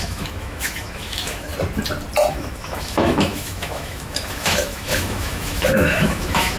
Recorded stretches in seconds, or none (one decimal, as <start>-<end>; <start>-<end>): 1.5-2.3